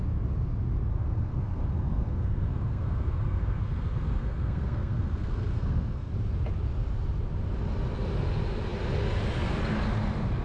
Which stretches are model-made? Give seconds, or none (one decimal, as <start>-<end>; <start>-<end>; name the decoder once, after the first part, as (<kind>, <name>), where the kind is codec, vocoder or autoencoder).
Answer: 0.9-6.1 (codec, SNAC)